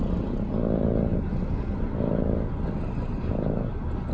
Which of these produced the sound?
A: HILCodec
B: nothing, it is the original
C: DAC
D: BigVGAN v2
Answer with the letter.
B